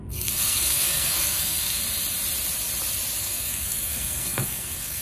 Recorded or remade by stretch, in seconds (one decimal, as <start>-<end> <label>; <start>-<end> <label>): 0.0-1.8 remade; 1.8-3.2 recorded; 3.2-5.0 remade